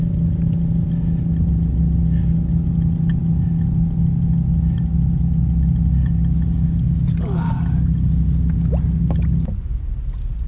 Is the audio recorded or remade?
recorded